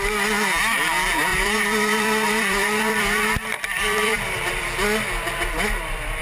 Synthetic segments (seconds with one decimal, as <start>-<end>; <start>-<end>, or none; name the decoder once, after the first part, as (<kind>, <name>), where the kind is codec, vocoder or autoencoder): 1.3-4.6 (vocoder, BigVGAN v2)